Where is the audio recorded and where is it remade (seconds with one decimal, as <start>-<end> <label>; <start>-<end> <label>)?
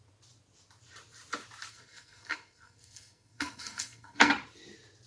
0.0-1.7 recorded; 1.7-4.3 remade; 4.3-5.1 recorded